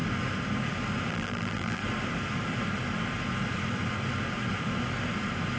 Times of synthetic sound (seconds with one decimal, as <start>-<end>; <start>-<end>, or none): 1.1-1.8